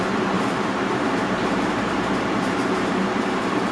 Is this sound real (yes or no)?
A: no